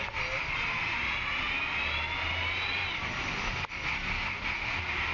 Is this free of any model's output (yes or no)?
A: yes